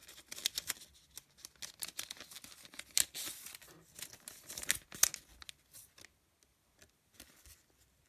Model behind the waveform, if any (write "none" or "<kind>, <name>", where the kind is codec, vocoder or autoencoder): none